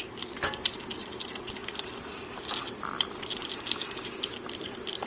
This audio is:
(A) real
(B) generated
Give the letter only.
A